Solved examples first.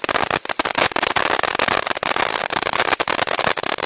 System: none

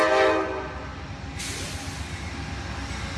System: none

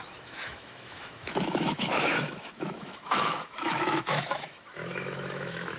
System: autoencoder, DAC-VAE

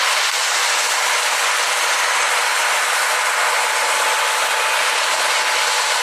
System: none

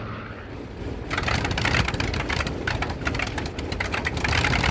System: none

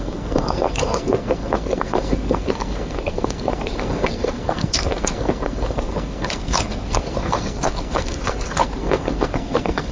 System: codec, SNAC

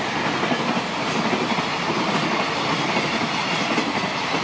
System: none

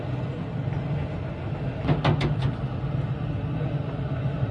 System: none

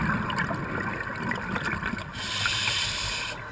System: none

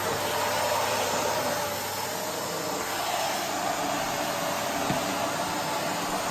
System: none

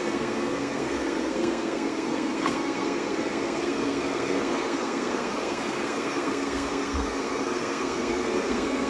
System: codec, SNAC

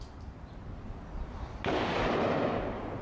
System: none